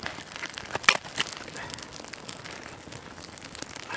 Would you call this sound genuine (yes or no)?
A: yes